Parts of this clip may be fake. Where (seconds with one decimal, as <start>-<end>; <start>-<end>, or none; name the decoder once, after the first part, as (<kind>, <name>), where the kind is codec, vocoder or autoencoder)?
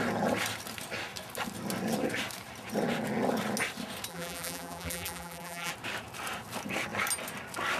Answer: 4.1-5.7 (vocoder, BigVGAN v2)